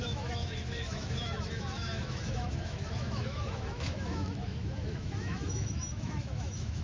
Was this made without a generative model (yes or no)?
no